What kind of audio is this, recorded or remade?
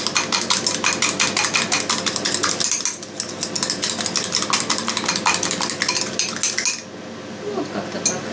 recorded